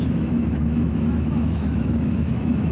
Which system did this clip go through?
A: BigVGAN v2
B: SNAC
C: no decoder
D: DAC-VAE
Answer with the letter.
D